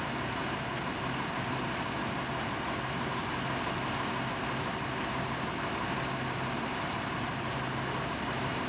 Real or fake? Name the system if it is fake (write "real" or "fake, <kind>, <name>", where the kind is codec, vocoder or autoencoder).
real